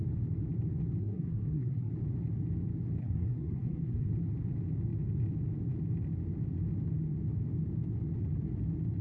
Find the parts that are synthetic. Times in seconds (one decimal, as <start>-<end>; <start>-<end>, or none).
1.0-1.9; 3.0-4.1